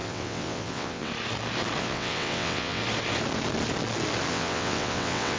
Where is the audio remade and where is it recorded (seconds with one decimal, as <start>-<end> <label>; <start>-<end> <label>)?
0.0-1.1 remade; 1.1-1.8 recorded; 1.8-2.8 remade; 2.8-4.3 recorded; 4.3-5.4 remade